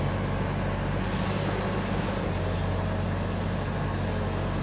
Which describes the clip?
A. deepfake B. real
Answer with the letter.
B